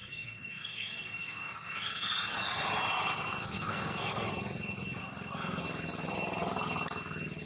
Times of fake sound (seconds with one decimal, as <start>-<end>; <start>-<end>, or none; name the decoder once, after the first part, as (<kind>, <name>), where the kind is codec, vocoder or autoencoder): 0.0-2.1 (codec, SNAC); 3.4-4.3; 5.0-5.6